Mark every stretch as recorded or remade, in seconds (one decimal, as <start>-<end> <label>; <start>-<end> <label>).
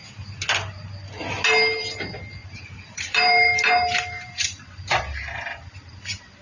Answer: 0.0-2.4 recorded; 2.4-5.0 remade; 5.0-6.4 recorded